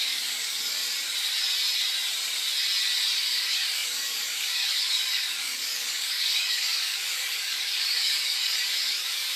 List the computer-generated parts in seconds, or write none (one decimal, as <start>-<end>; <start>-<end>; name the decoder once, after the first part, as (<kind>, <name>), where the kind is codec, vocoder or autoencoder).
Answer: 0.0-0.8 (codec, DAC); 3.2-9.4